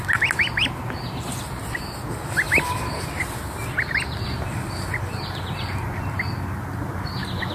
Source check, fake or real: real